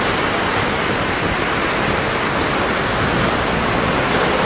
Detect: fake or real real